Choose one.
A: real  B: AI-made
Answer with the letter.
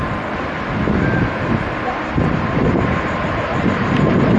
A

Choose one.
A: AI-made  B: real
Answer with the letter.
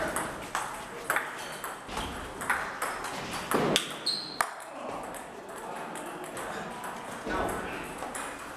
B